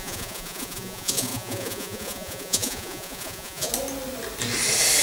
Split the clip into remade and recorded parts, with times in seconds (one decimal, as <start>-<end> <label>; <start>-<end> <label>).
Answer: 0.0-3.7 remade; 3.7-5.0 recorded